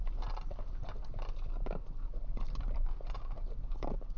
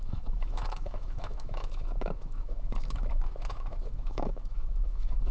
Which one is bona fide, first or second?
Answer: first